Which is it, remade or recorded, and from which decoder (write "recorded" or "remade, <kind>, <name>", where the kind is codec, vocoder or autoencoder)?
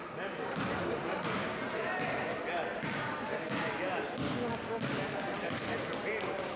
recorded